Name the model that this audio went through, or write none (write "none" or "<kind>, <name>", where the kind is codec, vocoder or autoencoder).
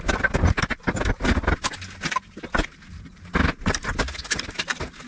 none